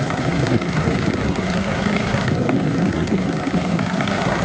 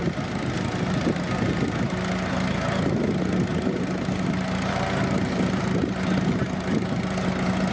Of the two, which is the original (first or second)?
second